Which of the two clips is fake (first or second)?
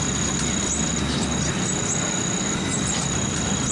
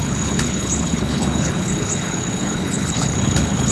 second